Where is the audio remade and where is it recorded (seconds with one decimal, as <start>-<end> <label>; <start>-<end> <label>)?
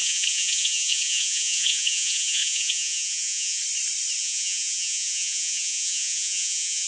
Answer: 0.0-3.6 remade; 3.6-4.2 recorded; 4.2-6.9 remade